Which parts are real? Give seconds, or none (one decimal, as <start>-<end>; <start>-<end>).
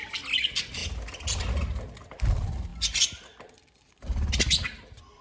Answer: 0.0-5.2